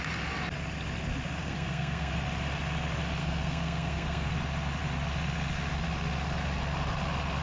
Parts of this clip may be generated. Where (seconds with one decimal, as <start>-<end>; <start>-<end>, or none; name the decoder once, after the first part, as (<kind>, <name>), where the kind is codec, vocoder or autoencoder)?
1.4-2.1 (codec, SNAC); 3.2-4.3